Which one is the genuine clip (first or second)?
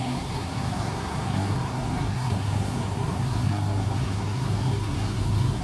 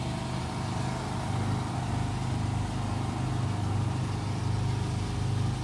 second